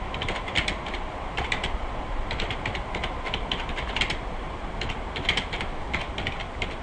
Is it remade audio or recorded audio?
recorded